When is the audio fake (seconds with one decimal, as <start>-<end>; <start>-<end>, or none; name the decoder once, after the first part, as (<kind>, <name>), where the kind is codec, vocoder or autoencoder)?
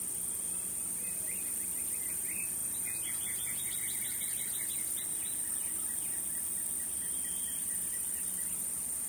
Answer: 2.6-3.7 (vocoder, Vocos)